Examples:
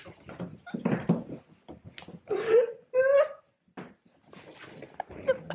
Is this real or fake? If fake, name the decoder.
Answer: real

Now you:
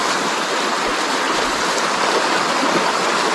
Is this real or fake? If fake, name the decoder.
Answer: real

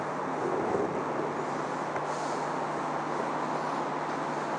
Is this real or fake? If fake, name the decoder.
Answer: real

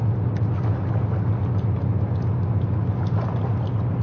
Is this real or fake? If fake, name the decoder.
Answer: real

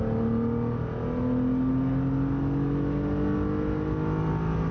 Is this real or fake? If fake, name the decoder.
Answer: real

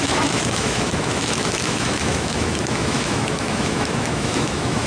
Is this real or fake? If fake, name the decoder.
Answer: fake, autoencoder, DAC-VAE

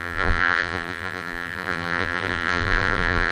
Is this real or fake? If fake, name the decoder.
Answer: fake, vocoder, BigVGAN v2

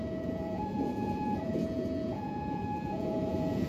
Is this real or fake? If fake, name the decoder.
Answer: fake, vocoder, Vocos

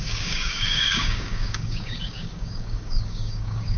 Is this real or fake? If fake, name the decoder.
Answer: fake, codec, DAC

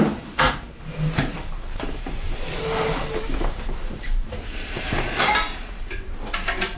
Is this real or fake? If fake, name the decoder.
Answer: fake, vocoder, BigVGAN v2